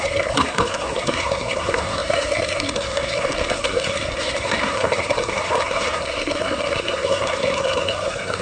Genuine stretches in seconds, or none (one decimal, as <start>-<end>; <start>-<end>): none